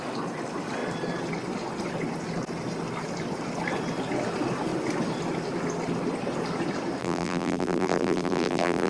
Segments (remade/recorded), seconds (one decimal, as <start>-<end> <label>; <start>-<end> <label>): 0.0-7.0 recorded; 7.0-8.9 remade